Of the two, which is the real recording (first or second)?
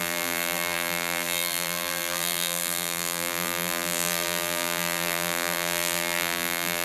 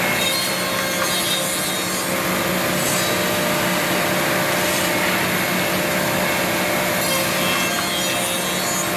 second